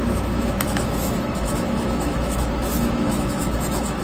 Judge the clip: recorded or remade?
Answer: remade